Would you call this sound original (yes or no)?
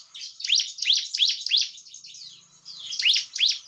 yes